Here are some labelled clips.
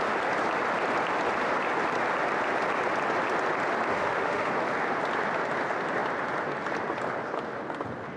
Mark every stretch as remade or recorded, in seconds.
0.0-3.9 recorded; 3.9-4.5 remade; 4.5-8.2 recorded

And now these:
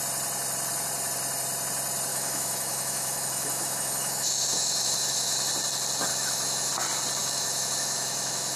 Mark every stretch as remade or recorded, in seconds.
0.0-2.1 recorded; 2.1-5.5 remade; 5.5-6.1 recorded; 6.1-6.7 remade; 6.7-7.2 recorded; 7.2-8.6 remade

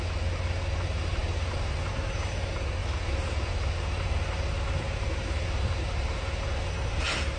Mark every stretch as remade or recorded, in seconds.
0.0-7.4 recorded

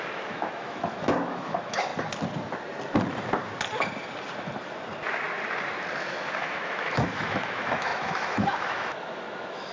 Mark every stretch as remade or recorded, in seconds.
0.0-1.9 remade; 1.9-6.0 recorded; 6.0-9.7 remade